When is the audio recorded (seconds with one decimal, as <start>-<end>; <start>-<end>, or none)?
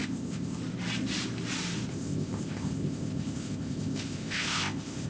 0.6-1.9